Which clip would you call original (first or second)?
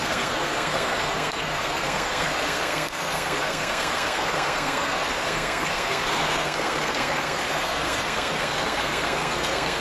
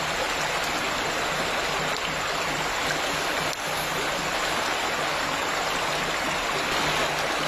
second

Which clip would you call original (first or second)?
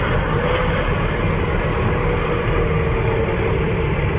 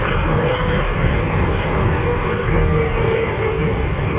first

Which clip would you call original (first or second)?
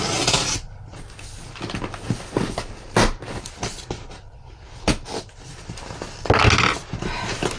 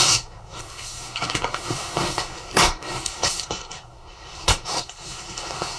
first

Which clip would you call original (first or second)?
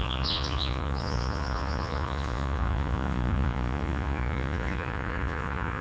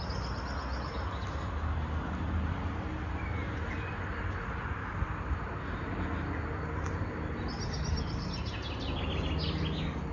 second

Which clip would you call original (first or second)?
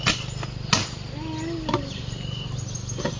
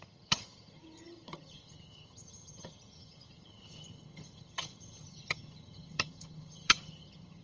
first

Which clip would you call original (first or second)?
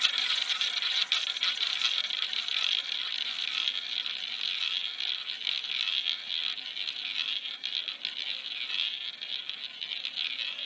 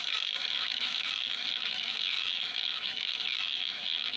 first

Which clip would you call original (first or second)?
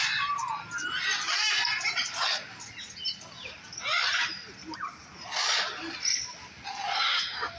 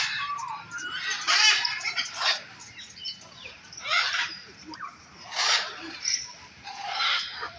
first